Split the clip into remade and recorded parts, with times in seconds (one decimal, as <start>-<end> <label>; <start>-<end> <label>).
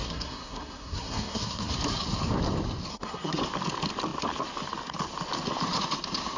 0.0-1.7 remade; 1.7-2.9 recorded; 2.9-3.4 remade; 3.4-6.4 recorded